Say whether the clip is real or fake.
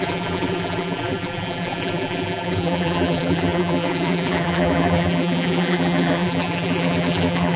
fake